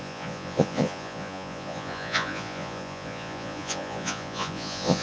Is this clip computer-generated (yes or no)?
yes